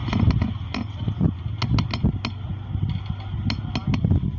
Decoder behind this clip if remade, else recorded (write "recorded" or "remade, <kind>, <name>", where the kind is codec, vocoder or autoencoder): recorded